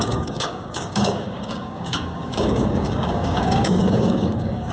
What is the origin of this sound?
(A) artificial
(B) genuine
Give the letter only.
A